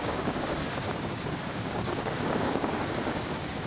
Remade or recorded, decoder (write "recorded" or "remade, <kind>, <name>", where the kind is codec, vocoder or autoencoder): remade, codec, DAC